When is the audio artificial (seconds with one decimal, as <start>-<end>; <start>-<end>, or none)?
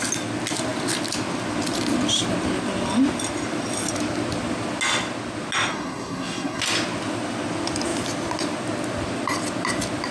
5.7-6.6